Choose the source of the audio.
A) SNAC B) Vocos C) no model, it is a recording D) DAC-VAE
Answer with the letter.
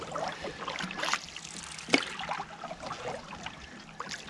C